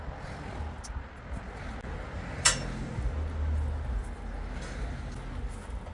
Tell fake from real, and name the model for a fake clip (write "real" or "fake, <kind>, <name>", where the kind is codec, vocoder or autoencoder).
real